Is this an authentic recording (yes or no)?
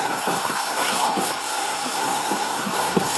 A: no